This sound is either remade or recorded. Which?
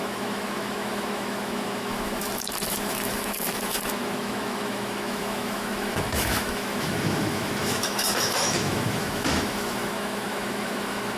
remade